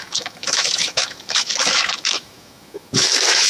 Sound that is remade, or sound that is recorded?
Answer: remade